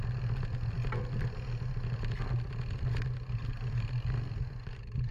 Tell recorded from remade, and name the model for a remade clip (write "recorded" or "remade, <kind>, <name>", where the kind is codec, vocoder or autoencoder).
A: recorded